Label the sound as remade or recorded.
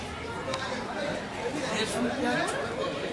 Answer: recorded